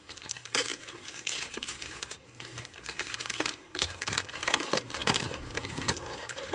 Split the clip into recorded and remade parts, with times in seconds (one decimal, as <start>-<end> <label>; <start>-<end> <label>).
0.0-6.5 remade

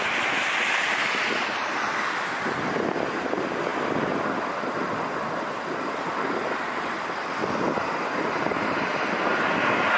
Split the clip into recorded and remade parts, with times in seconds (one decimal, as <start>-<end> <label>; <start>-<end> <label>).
0.0-10.0 recorded

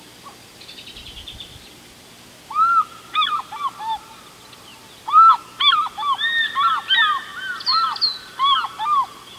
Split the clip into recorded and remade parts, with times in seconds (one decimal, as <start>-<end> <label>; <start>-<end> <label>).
0.0-4.7 recorded; 4.7-5.4 remade; 5.4-9.4 recorded

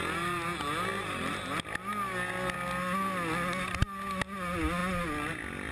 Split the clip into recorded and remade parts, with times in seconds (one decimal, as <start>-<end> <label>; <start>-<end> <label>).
0.0-5.7 recorded

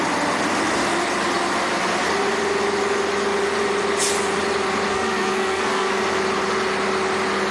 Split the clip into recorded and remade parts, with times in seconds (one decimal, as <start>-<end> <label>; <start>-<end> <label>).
0.0-4.9 recorded; 4.9-6.0 remade; 6.0-7.5 recorded

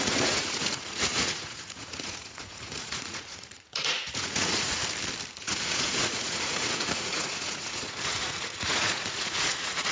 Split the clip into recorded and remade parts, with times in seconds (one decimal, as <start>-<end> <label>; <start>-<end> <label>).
0.0-4.8 remade; 4.8-5.3 recorded; 5.3-9.9 remade

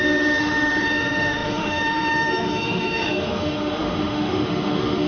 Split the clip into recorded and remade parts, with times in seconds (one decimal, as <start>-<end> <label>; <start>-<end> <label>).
0.0-5.1 remade